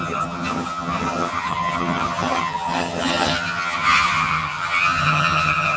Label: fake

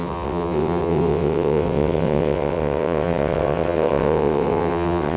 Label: fake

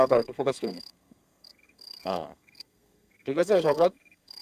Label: fake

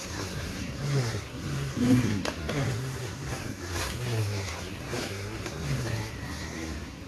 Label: fake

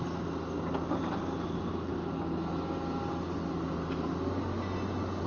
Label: real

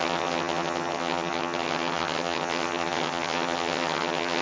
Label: fake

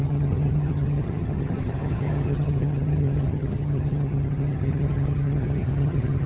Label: fake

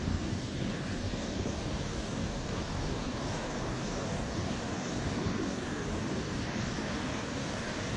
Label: fake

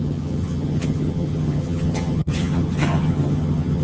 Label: fake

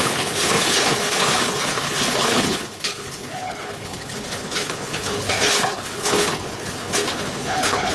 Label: fake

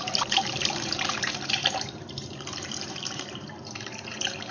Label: fake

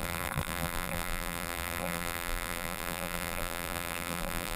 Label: fake